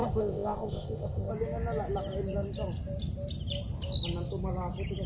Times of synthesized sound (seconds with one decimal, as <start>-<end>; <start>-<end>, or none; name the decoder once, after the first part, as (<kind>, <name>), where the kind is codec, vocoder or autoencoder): 0.0-1.3 (codec, ZipCodec)